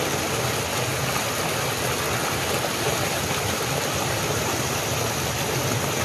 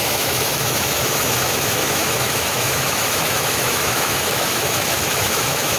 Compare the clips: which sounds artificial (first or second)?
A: second